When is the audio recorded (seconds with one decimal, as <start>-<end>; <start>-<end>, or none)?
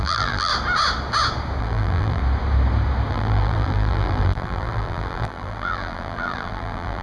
0.5-1.6; 2.2-3.1